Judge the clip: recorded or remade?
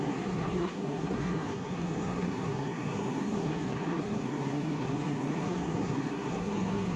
remade